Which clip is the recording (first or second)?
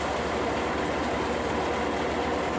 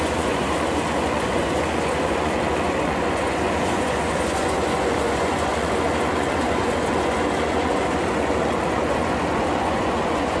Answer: first